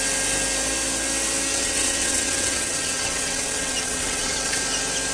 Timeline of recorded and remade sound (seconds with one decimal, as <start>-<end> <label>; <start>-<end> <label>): 0.0-1.5 recorded; 1.5-4.6 remade; 4.6-5.1 recorded